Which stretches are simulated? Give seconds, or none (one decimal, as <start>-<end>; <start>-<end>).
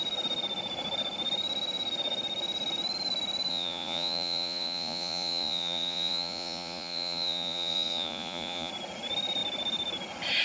3.5-8.7